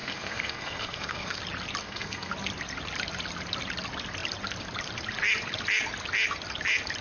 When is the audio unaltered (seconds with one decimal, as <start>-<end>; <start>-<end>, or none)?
1.4-1.8; 2.3-7.0